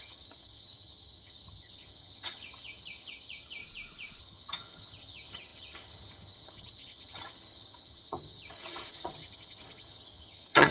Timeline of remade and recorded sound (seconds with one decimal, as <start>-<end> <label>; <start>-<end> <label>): 0.0-3.6 remade; 3.6-4.2 recorded; 4.2-10.7 remade